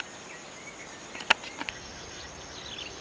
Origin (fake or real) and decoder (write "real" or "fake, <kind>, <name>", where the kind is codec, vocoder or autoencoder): real